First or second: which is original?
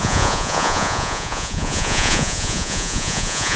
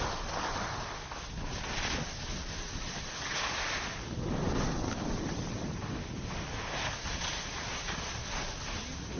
second